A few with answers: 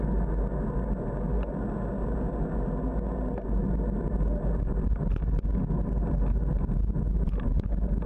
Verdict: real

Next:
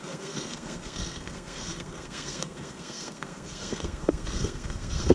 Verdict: fake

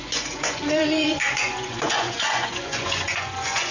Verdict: fake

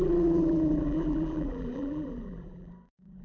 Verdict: fake